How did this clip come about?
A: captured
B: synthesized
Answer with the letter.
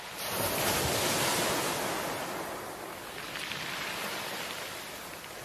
A